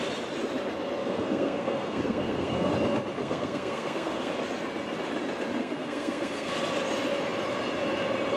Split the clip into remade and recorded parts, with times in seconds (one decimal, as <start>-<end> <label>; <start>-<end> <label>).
0.0-1.0 recorded; 1.0-2.7 remade; 2.7-3.2 recorded; 3.2-4.3 remade; 4.3-5.6 recorded; 5.6-6.5 remade; 6.5-8.4 recorded